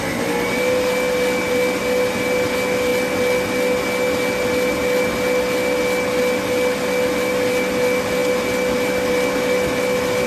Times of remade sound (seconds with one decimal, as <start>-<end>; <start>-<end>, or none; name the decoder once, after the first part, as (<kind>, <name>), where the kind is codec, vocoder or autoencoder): none

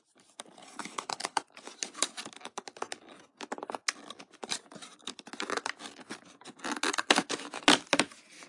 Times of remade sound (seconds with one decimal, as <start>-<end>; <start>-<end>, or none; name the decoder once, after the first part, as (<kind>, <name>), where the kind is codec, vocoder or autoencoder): 0.6-1.4 (codec, HILCodec)

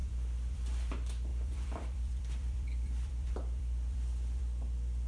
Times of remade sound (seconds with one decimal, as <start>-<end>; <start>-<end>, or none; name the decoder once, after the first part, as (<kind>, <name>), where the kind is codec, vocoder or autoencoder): 0.0-0.9 (vocoder, BigVGAN v2); 1.3-4.4

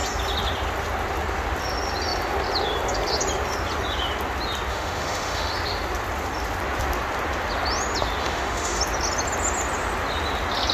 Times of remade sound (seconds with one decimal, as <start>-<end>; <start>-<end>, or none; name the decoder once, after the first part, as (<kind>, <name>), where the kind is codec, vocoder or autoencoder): 4.7-5.5 (autoencoder, DAC-VAE); 8.2-8.8

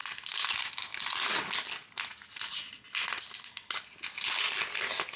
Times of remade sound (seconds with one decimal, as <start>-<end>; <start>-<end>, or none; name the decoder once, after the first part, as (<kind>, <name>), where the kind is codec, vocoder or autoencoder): none

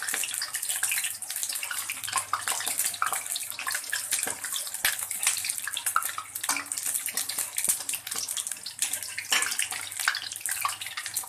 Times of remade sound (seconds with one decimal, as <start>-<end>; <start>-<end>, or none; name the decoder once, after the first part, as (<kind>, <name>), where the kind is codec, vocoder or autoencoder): none